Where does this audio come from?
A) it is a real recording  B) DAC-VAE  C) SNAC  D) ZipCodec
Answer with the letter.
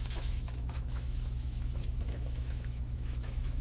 B